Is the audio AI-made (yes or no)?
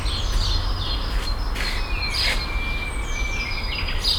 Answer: no